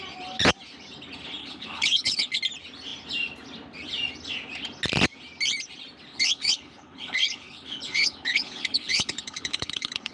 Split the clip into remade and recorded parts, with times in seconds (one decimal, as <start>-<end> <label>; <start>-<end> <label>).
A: 0.0-1.4 recorded; 1.4-2.4 remade; 2.4-6.1 recorded; 6.1-10.1 remade